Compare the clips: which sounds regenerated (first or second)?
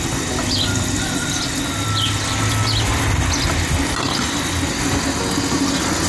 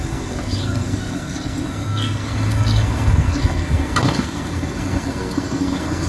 second